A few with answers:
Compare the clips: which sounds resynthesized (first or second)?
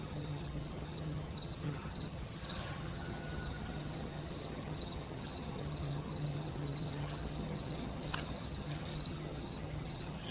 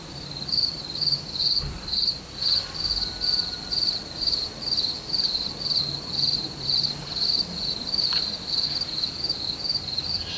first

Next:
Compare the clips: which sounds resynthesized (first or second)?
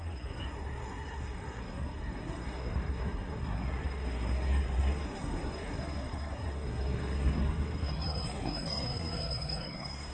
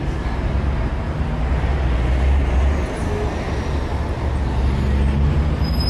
first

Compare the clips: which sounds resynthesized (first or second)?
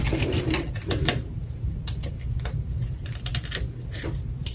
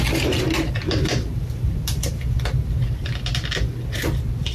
first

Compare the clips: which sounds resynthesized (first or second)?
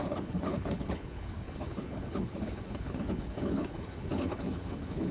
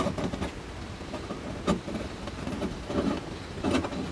first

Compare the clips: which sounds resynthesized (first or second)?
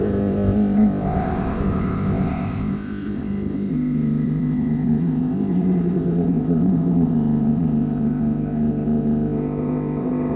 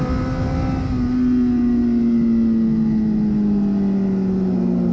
first